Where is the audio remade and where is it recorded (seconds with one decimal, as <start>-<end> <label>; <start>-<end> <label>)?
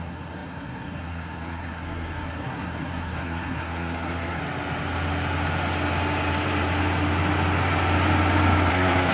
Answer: 0.0-4.4 remade; 4.4-8.7 recorded; 8.7-9.1 remade